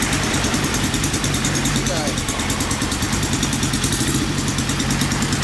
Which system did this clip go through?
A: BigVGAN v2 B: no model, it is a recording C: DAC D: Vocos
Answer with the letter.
A